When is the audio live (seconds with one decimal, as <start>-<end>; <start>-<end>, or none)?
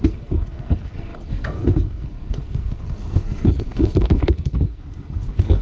none